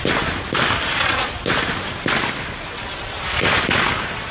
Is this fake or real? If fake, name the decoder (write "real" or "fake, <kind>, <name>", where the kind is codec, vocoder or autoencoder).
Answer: real